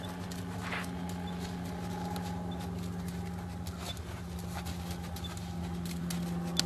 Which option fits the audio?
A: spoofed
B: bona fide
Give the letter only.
B